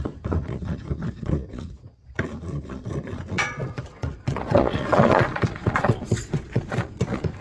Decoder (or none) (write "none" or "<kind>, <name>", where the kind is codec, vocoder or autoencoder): vocoder, Vocos